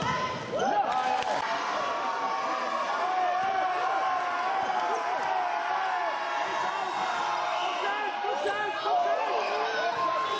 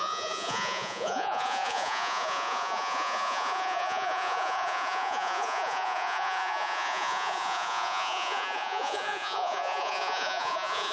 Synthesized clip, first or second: second